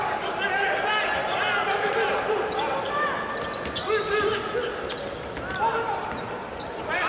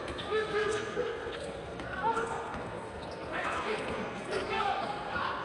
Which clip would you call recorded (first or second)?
first